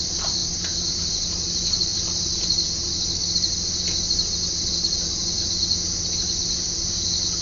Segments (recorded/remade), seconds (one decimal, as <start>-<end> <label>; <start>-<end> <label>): 0.0-0.4 remade; 0.4-1.1 recorded; 1.1-1.9 remade; 1.9-4.7 recorded; 4.7-5.6 remade; 5.6-6.4 recorded; 6.4-7.4 remade